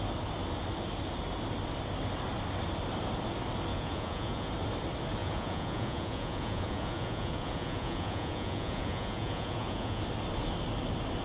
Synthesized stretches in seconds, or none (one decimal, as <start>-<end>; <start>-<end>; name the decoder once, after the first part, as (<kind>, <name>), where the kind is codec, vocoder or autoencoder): 3.7-4.5 (vocoder, Vocos); 5.2-10.0